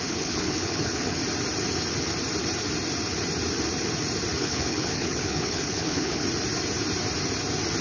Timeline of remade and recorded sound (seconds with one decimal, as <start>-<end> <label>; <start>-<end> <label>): 0.0-1.2 remade; 1.2-4.4 recorded; 4.4-6.2 remade; 6.2-7.8 recorded